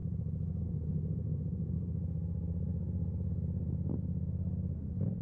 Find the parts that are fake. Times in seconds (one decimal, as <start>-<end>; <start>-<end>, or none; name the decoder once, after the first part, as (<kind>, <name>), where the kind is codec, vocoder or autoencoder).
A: 2.7-3.3 (codec, DAC)